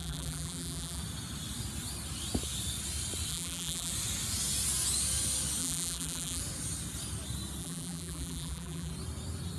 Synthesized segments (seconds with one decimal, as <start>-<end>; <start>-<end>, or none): 0.0-1.0; 3.3-3.9; 5.6-6.4; 7.6-8.9